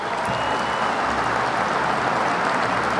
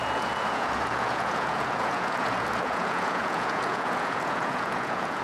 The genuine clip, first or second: first